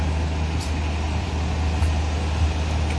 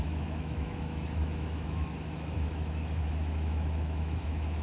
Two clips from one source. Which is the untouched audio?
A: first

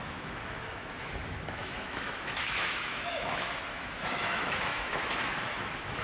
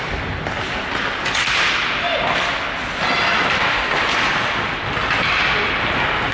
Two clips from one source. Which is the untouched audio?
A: second